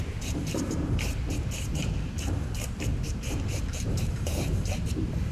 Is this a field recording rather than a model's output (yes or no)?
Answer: no